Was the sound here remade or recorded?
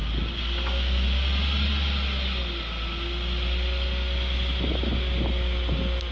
recorded